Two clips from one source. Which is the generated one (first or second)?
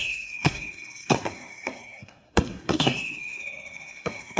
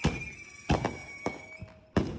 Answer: first